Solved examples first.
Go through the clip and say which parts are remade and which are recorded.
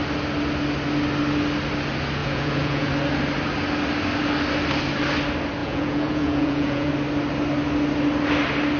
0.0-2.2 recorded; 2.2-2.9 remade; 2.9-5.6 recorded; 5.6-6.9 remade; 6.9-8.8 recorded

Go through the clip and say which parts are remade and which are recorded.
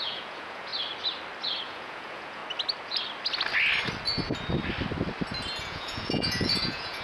0.0-0.7 remade; 0.7-1.6 recorded; 1.6-2.4 remade; 2.4-5.6 recorded; 5.6-7.0 remade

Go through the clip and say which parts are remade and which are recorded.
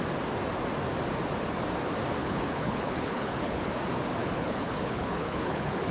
0.0-2.2 recorded; 2.2-3.7 remade; 3.7-4.2 recorded; 4.2-5.9 remade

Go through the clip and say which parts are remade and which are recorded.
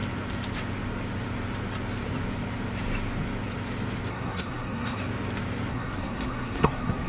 0.0-4.1 recorded; 4.1-5.1 remade; 5.1-5.7 recorded; 5.7-7.1 remade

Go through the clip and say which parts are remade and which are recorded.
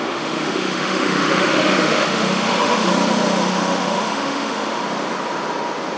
0.0-2.9 remade; 2.9-3.5 recorded; 3.5-4.8 remade; 4.8-6.0 recorded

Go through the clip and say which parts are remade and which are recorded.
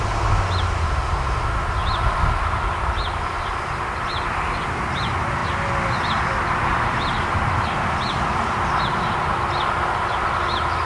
0.0-10.9 recorded